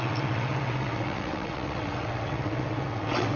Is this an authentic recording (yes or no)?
no